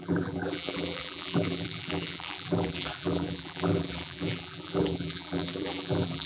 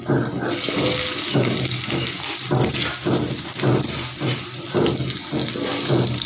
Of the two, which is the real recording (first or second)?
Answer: second